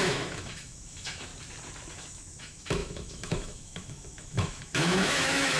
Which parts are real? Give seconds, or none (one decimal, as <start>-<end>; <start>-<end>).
1.3-1.9